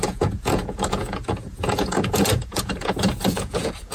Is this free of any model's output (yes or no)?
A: no